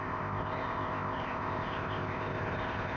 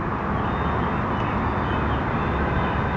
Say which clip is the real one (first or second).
second